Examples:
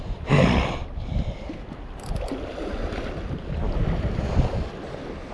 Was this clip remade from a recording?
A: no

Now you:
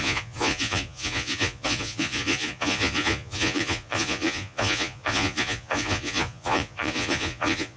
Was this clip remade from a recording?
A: yes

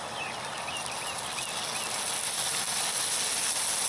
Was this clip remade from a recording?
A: no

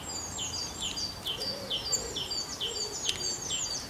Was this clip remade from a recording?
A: no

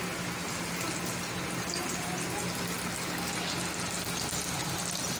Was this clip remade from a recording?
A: no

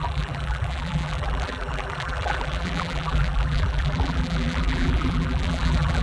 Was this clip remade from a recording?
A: yes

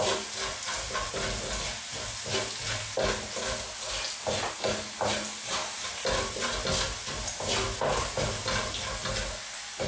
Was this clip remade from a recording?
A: no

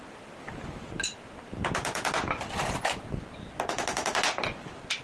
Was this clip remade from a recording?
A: no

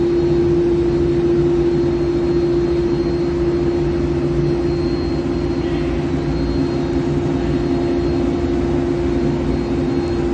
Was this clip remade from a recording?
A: no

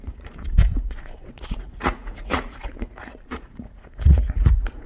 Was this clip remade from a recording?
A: yes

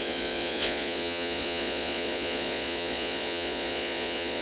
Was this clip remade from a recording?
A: yes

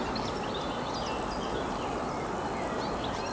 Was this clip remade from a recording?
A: no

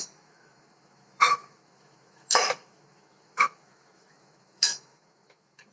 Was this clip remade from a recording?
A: yes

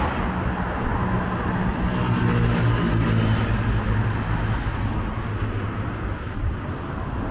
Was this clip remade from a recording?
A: no